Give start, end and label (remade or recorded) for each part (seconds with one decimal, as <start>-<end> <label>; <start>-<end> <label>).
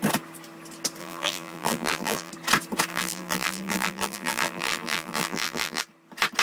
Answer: 0.0-1.0 recorded; 1.0-2.3 remade; 2.3-2.9 recorded; 2.9-5.8 remade; 5.8-6.4 recorded